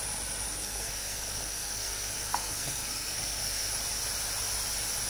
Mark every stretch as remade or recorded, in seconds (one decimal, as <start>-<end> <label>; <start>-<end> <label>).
0.0-0.6 recorded; 0.6-3.7 remade; 3.7-5.1 recorded